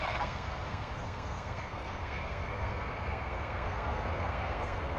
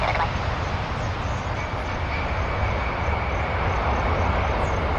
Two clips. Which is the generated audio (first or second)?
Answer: first